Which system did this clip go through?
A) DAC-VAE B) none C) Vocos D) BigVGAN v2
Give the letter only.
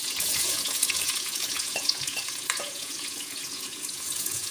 C